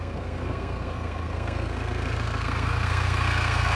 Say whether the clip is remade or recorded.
remade